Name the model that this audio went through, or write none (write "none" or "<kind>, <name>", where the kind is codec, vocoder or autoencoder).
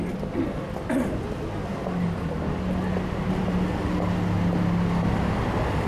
none